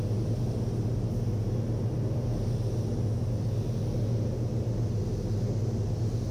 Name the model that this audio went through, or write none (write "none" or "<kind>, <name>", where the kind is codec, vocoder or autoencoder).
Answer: none